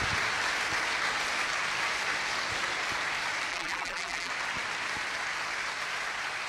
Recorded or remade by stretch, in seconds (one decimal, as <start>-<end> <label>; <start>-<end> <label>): 0.0-3.5 recorded; 3.5-4.3 remade; 4.3-6.5 recorded